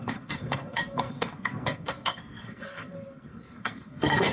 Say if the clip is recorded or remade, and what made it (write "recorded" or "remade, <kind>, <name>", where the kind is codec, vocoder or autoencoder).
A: remade, codec, SNAC